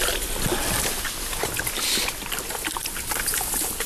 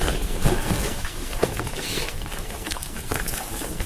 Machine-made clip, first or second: second